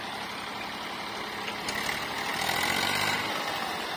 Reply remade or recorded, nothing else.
recorded